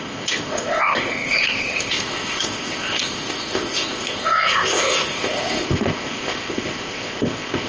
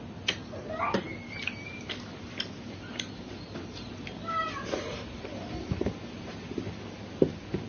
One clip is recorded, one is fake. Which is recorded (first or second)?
second